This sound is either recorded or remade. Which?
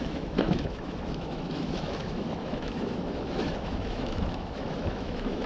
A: remade